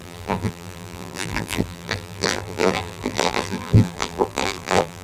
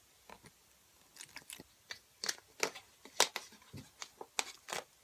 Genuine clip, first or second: second